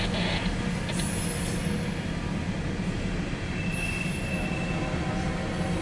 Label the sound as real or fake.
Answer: real